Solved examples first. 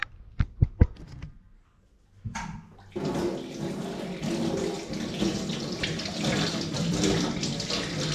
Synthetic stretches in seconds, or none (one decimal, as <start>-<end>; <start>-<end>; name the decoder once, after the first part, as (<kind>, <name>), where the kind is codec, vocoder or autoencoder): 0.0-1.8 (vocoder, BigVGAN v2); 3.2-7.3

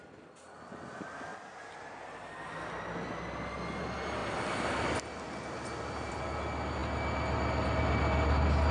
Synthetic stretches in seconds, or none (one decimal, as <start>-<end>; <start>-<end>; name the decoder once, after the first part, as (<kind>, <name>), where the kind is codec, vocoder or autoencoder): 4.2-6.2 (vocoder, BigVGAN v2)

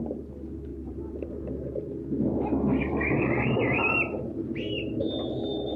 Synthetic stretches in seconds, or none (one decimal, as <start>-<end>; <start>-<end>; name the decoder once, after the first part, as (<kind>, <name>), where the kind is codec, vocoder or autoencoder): 0.7-2.0 (vocoder, BigVGAN v2); 2.8-4.9

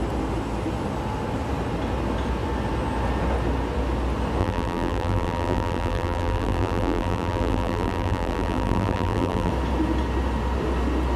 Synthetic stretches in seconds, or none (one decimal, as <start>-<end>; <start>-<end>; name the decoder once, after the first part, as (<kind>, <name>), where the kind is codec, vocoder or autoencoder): 4.4-9.5 (vocoder, BigVGAN v2)

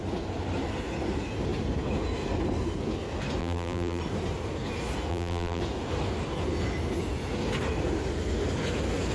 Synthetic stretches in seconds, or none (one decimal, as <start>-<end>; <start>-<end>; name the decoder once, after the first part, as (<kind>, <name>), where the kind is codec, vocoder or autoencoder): 3.4-4.0 (vocoder, BigVGAN v2); 5.1-5.6